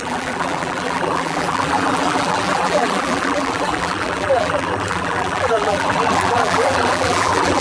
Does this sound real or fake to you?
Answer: fake